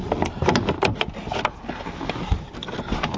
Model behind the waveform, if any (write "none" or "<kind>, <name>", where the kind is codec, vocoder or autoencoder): none